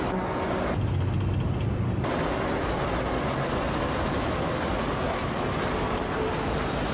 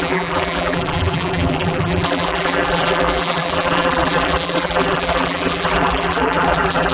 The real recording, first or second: first